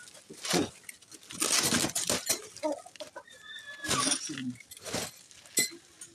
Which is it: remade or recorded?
recorded